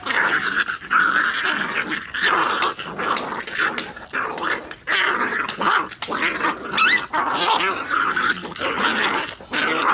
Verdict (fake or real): real